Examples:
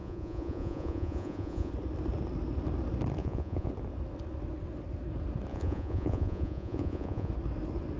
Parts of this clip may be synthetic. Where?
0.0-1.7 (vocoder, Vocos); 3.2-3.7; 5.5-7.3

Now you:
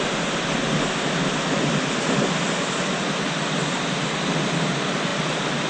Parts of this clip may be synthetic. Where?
none